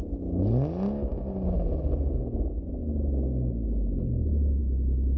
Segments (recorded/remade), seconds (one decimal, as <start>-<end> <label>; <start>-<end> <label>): 0.0-5.2 recorded